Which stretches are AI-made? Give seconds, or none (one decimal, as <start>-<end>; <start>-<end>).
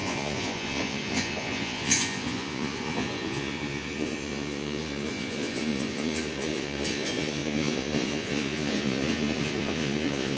0.0-10.4